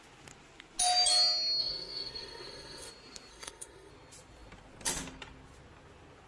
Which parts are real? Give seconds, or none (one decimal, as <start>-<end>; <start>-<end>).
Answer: 0.0-1.6; 2.9-3.3; 3.9-6.3